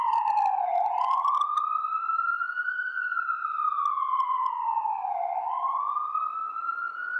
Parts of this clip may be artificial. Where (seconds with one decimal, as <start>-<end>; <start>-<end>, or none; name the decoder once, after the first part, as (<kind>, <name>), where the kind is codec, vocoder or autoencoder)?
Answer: none